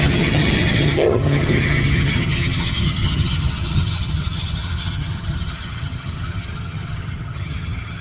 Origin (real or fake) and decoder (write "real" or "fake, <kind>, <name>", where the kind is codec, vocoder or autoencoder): fake, vocoder, HiFi-GAN